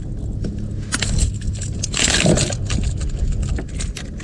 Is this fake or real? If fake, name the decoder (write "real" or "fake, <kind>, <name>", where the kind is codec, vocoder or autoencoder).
real